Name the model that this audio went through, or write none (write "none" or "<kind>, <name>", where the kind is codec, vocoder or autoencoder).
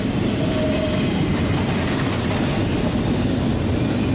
none